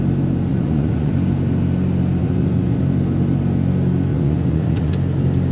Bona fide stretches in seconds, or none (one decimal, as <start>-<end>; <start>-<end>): 0.0-0.5; 1.1-2.2; 2.8-4.1; 4.9-5.5